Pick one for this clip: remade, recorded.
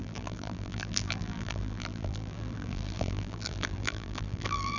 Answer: remade